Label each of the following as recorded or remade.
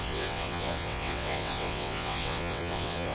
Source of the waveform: remade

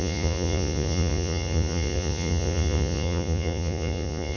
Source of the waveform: remade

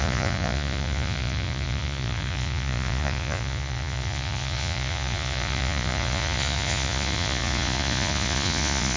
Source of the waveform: remade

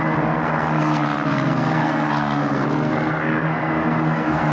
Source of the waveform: remade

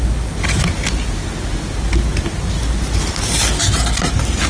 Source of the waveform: recorded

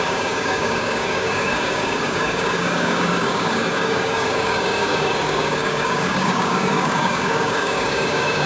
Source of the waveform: remade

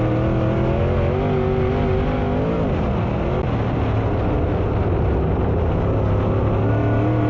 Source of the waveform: recorded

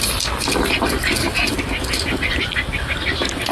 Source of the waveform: recorded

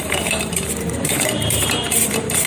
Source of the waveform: remade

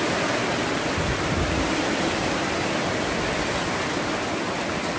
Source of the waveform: recorded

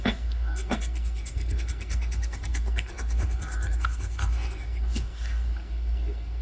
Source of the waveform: remade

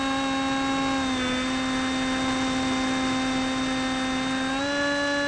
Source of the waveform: recorded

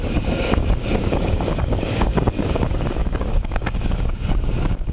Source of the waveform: remade